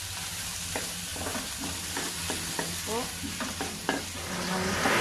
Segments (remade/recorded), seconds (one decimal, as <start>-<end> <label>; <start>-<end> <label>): 0.0-1.1 recorded; 1.1-2.2 remade; 2.2-5.0 recorded